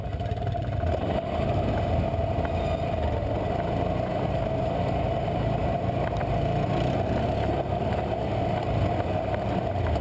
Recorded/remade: recorded